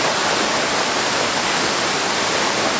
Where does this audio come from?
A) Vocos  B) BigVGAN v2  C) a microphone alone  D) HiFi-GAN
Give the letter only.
C